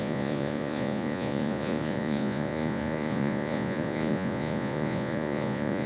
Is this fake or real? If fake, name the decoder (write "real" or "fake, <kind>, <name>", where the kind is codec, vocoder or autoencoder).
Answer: fake, vocoder, Vocos